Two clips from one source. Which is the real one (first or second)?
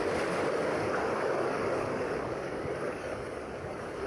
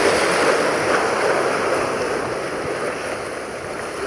second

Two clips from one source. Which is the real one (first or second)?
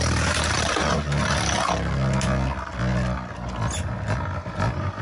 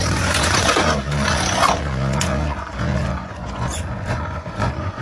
first